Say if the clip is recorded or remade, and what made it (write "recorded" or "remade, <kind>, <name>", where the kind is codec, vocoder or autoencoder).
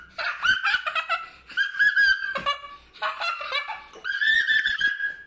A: recorded